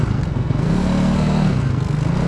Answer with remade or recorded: remade